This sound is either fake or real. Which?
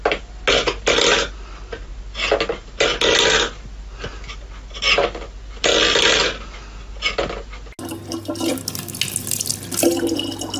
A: real